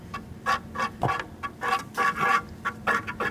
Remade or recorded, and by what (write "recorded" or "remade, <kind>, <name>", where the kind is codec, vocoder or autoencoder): recorded